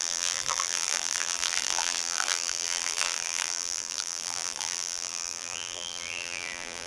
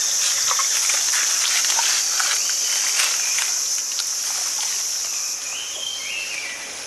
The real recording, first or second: second